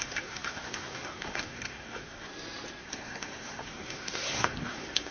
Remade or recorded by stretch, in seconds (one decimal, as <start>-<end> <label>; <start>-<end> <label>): 0.0-2.3 remade; 2.3-2.8 recorded; 2.8-5.1 remade